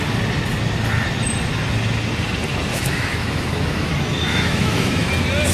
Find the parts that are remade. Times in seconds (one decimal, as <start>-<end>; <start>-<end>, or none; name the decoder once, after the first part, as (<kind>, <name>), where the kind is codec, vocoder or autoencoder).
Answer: 2.7-3.9 (autoencoder, DAC-VAE); 4.3-5.1